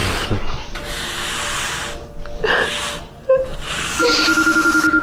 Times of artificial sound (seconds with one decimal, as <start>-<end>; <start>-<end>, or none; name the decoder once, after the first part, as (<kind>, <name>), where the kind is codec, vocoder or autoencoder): 3.0-3.5 (vocoder, BigVGAN v2); 4.0-5.0